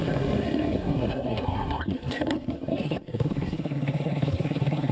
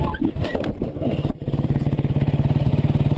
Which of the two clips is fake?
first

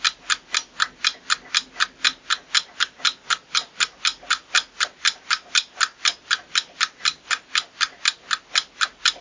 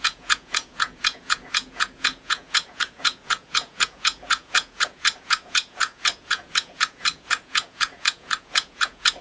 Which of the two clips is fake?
second